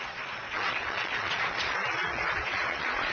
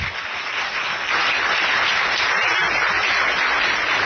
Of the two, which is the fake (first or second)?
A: first